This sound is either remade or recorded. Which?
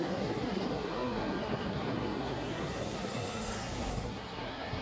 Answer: remade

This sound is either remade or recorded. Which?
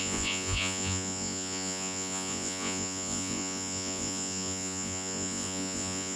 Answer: remade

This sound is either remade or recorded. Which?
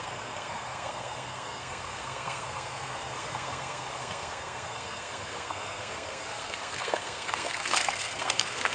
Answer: remade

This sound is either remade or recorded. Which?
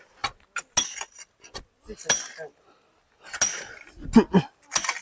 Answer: recorded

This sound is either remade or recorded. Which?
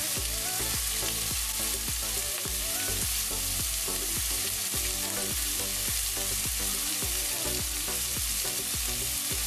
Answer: recorded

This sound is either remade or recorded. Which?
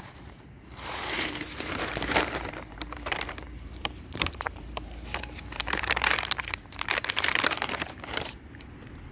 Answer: remade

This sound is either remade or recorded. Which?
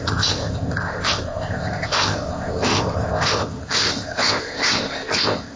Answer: remade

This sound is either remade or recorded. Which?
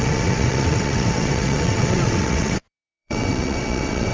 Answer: remade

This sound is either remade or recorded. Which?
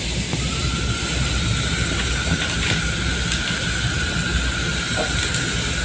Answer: recorded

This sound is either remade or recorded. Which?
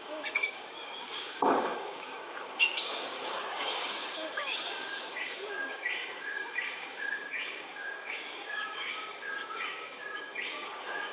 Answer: remade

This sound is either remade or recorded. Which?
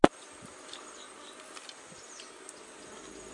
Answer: recorded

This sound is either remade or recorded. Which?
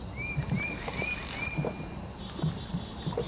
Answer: recorded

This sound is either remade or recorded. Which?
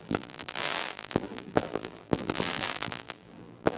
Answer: remade